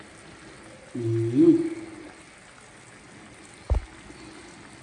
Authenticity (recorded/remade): recorded